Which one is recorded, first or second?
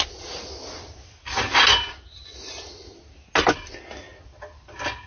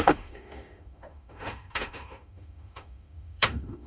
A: first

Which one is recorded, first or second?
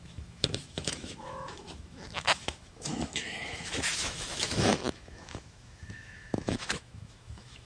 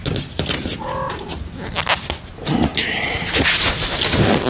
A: second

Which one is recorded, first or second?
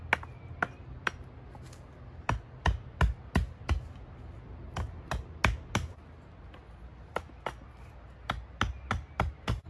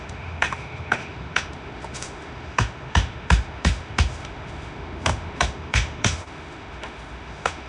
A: first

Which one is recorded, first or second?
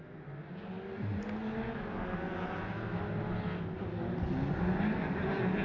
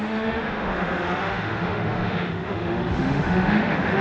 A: first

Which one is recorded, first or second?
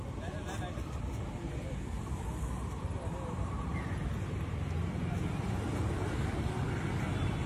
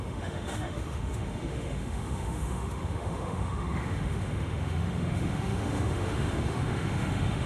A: first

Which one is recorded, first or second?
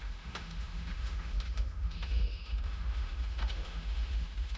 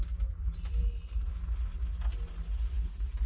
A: second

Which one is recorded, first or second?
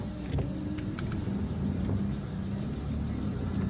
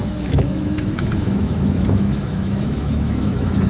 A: first